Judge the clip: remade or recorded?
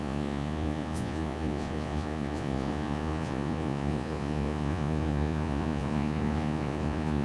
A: remade